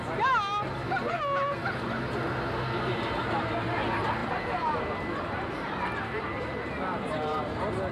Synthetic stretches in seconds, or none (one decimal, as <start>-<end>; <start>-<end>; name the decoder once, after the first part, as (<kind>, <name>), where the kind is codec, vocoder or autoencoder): 4.2-4.8 (vocoder, BigVGAN v2)